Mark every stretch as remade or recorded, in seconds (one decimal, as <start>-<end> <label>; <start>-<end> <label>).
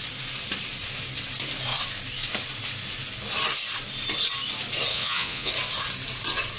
0.0-4.9 recorded; 4.9-5.5 remade; 5.5-6.6 recorded